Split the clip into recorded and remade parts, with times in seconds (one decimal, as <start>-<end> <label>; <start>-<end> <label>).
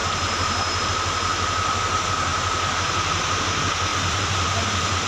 0.0-0.9 remade; 0.9-3.9 recorded; 3.9-5.1 remade